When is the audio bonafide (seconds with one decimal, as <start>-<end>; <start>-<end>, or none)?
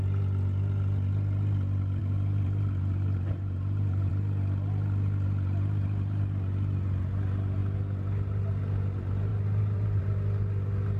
0.0-2.0; 4.1-9.3; 10.0-11.0